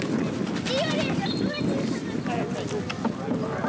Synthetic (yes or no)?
no